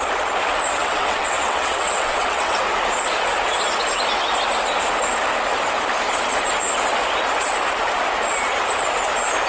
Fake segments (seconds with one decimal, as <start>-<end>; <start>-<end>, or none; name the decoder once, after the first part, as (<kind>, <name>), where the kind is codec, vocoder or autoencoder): 0.8-2.6 (vocoder, WaveNeXt)